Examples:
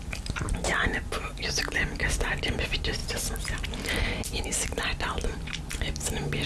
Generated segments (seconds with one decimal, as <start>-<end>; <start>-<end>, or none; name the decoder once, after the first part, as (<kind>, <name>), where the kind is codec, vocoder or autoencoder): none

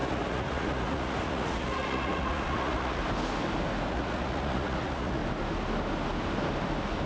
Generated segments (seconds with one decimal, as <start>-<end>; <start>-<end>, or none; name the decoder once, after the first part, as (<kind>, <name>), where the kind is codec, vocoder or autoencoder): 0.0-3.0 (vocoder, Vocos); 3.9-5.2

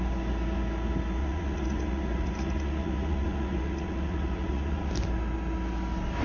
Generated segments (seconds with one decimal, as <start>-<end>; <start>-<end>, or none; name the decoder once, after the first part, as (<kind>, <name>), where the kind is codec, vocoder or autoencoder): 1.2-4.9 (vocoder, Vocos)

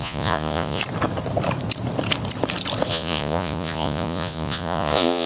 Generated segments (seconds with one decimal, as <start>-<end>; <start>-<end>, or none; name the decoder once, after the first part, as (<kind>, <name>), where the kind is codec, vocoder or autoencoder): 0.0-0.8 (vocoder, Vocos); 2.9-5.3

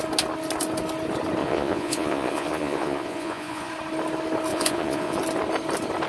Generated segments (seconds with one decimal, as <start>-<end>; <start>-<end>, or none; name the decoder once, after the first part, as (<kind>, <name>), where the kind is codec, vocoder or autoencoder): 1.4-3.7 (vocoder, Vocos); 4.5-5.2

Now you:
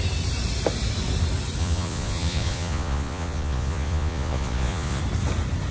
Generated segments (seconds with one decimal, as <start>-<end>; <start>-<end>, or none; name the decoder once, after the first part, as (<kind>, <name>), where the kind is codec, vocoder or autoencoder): 1.6-5.0 (vocoder, Vocos)